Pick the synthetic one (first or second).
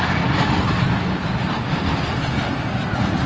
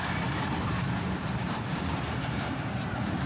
second